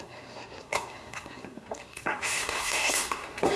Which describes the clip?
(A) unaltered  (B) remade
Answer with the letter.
B